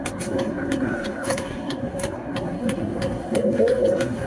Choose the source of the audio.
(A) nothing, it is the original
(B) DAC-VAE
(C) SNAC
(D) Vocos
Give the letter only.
C